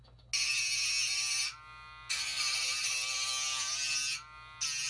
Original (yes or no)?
yes